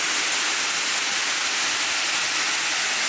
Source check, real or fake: real